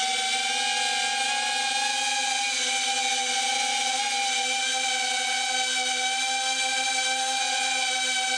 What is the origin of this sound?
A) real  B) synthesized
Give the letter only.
A